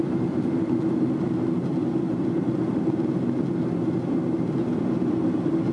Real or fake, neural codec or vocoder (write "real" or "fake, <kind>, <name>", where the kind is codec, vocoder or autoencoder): real